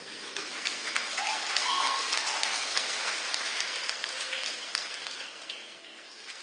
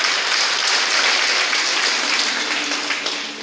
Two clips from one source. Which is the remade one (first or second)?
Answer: first